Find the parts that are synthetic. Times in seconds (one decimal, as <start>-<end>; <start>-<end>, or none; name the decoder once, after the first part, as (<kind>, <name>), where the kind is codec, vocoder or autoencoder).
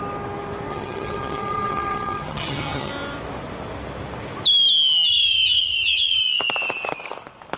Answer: 0.7-2.9 (vocoder, HiFi-GAN); 5.1-6.2